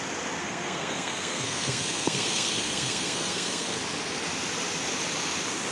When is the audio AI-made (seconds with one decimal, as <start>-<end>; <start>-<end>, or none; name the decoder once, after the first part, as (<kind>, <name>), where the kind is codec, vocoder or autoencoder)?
0.4-3.8 (codec, SNAC)